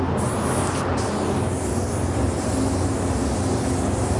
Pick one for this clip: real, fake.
real